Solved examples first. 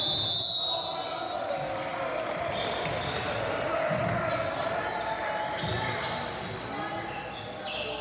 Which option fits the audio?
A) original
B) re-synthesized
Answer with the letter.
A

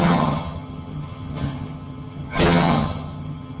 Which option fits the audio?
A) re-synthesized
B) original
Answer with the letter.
A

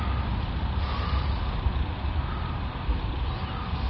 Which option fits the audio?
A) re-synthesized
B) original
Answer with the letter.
B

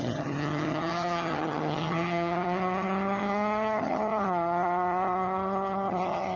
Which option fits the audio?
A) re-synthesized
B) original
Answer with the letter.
A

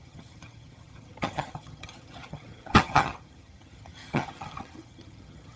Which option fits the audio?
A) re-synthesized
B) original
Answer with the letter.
A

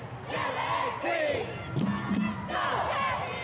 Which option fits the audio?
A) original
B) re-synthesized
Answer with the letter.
A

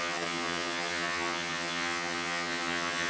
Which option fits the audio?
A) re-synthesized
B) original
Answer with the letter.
A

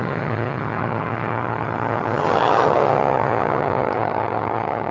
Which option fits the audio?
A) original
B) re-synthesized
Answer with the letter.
B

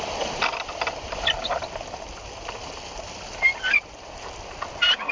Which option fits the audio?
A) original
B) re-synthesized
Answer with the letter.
A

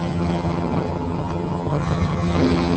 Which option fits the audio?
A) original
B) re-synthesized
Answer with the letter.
B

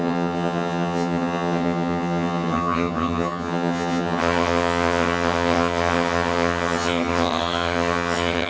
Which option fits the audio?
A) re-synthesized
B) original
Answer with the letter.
A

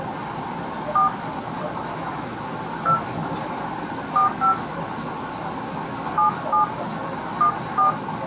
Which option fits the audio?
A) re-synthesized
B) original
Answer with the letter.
B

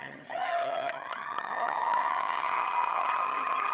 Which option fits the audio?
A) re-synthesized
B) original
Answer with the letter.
A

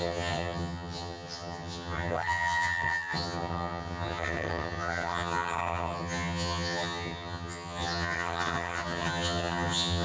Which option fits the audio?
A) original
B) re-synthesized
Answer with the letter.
B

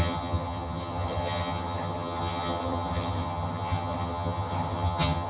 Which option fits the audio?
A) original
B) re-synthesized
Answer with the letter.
B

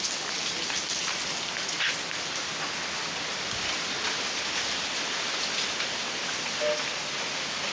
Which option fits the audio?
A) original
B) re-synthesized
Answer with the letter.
A